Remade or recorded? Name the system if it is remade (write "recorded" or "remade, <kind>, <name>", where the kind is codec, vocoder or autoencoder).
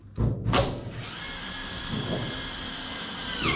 recorded